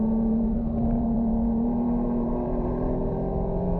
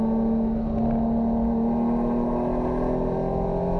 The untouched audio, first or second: second